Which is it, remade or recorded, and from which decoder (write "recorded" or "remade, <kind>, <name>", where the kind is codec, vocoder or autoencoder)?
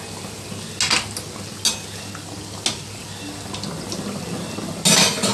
recorded